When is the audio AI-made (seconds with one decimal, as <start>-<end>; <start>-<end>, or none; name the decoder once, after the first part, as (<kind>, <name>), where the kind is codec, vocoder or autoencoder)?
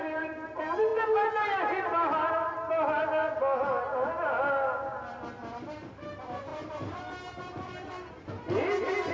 none